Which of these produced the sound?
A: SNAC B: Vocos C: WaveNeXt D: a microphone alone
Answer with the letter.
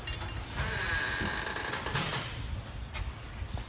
D